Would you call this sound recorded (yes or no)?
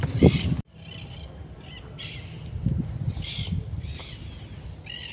yes